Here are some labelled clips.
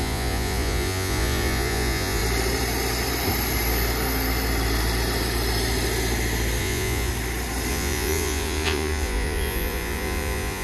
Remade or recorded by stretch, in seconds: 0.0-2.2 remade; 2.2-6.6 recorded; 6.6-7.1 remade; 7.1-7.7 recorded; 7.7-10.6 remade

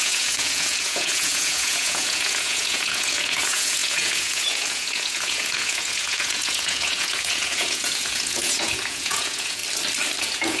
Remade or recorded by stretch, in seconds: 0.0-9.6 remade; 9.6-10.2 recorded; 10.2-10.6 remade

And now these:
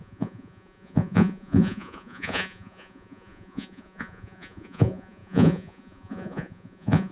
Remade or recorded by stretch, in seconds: 0.0-7.1 remade

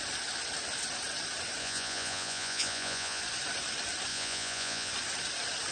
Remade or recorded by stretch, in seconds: 0.0-1.6 recorded; 1.6-3.2 remade; 3.2-4.1 recorded; 4.1-4.9 remade; 4.9-5.7 recorded